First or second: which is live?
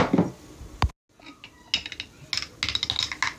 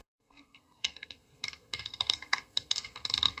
first